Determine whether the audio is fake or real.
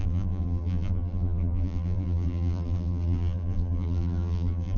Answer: fake